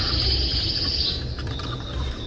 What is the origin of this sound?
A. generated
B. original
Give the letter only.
B